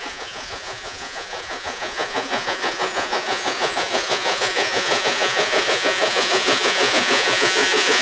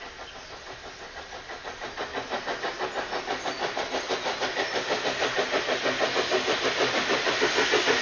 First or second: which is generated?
first